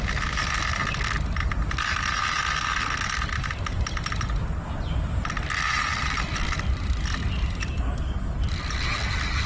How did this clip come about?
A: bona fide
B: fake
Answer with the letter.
A